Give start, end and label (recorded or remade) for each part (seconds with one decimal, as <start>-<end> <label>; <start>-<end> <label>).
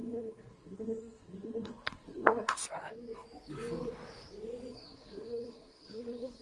0.0-2.6 remade; 2.6-4.7 recorded; 4.7-6.4 remade